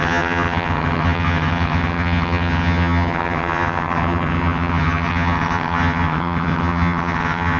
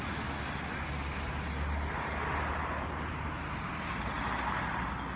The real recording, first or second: second